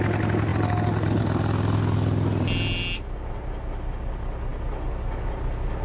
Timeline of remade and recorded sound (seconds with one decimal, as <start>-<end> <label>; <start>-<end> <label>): 0.0-5.8 recorded